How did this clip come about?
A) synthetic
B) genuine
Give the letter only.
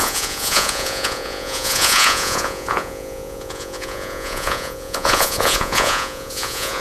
A